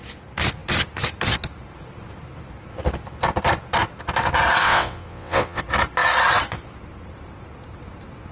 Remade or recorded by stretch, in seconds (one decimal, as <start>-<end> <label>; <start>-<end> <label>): 0.0-4.6 recorded; 4.6-5.6 remade; 5.6-8.3 recorded